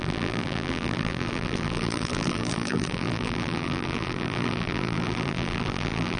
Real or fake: fake